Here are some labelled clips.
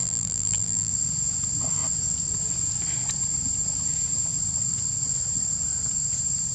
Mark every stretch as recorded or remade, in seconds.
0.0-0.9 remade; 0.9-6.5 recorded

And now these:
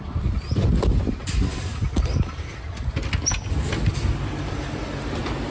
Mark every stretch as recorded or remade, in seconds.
0.0-1.5 recorded; 1.5-2.9 remade; 2.9-3.9 recorded; 3.9-5.1 remade; 5.1-5.5 recorded

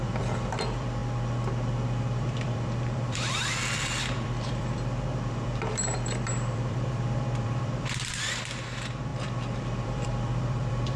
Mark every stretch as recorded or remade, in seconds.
0.0-1.0 remade; 1.0-2.0 recorded; 2.0-11.0 remade

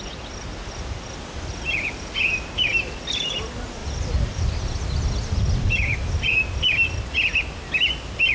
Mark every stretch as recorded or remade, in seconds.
0.0-8.3 recorded

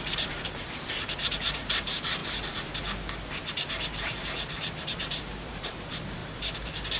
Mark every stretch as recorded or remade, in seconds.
0.0-2.2 remade; 2.2-3.7 recorded; 3.7-6.2 remade; 6.2-7.0 recorded

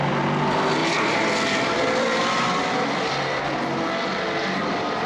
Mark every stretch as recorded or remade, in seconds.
0.0-0.8 recorded; 0.8-3.0 remade; 3.0-5.1 recorded

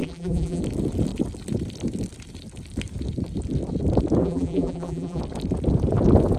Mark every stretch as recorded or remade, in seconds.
0.0-0.6 remade; 0.6-4.2 recorded; 4.2-5.2 remade; 5.2-6.4 recorded